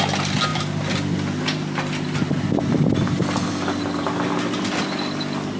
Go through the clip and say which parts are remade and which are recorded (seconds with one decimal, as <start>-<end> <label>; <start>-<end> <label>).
0.0-5.6 recorded